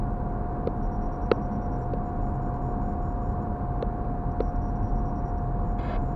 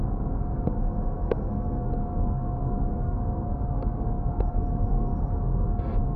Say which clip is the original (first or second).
first